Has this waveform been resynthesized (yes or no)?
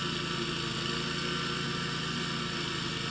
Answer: no